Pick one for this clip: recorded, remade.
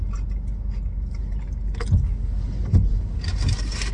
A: recorded